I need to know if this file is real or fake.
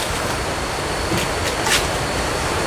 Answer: real